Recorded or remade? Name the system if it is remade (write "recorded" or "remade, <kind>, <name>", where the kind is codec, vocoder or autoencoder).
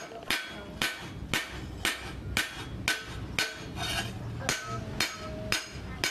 recorded